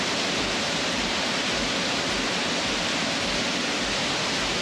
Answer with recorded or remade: remade